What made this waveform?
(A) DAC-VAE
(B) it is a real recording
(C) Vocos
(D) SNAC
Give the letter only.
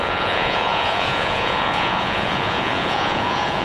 C